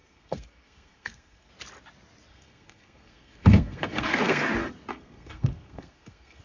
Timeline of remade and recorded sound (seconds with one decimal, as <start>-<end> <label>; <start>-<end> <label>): 0.0-1.5 remade; 1.5-2.3 recorded; 2.3-4.4 remade; 4.4-4.9 recorded; 4.9-6.4 remade